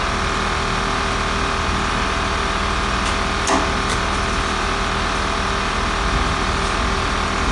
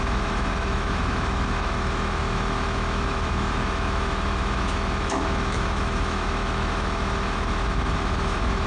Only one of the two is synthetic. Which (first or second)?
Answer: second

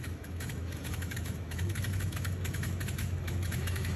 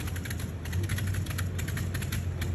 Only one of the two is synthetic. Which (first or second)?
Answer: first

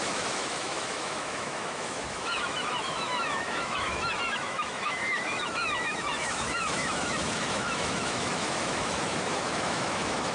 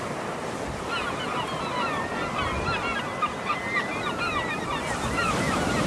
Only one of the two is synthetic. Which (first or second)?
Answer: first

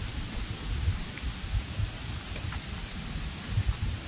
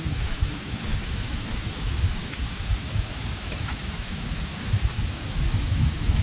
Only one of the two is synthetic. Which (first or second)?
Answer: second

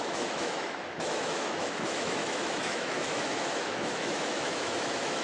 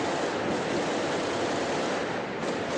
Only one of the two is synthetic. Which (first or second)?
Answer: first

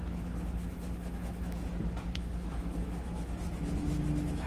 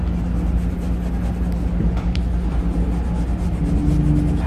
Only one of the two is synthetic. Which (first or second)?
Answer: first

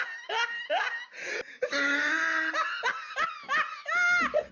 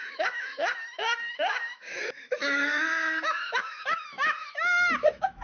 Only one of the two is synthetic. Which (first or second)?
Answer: second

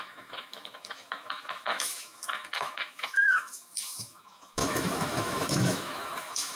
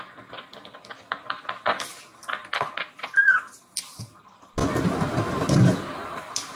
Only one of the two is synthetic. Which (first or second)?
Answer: first